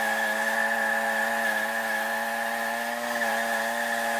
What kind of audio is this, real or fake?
real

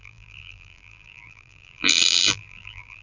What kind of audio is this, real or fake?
fake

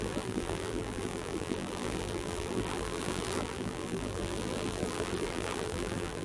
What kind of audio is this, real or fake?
fake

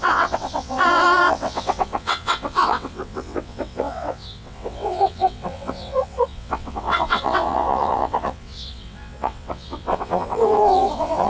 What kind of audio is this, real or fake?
fake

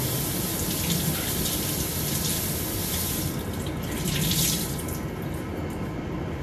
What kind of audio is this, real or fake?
real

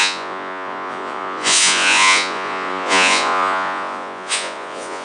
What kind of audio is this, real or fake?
fake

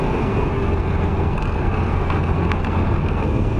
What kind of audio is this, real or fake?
fake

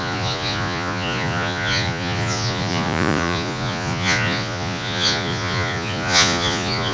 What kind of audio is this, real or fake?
fake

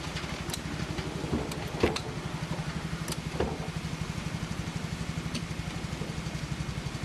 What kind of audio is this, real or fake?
real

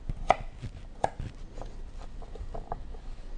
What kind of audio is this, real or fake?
real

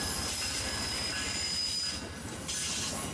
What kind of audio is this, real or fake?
real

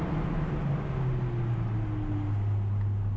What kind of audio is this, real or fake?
real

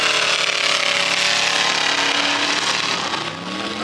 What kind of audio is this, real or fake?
real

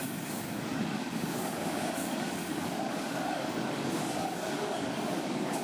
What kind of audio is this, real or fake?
fake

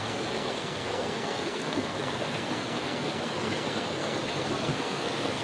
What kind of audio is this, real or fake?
fake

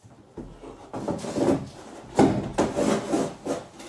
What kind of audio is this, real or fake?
real